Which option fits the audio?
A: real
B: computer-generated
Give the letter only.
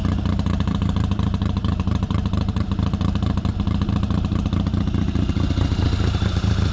B